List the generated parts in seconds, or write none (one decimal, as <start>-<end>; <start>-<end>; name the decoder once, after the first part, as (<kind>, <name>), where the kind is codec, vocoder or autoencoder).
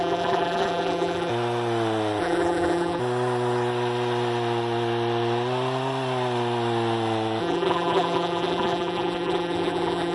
0.0-1.3 (vocoder, BigVGAN v2); 2.2-3.0; 7.4-10.1